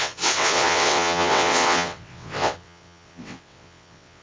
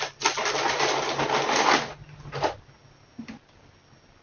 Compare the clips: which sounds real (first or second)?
second